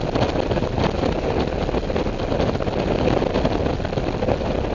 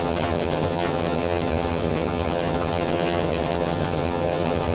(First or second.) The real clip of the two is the first